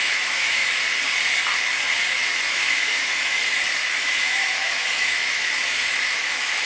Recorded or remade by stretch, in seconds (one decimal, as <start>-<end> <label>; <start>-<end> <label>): 0.0-0.6 remade; 0.6-2.4 recorded; 2.4-3.4 remade; 3.4-4.0 recorded; 4.0-6.6 remade